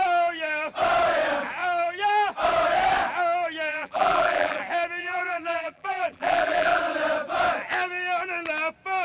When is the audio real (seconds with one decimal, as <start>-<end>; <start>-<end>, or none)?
0.0-3.7; 4.6-5.0; 6.8-9.0